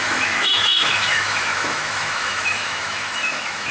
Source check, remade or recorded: remade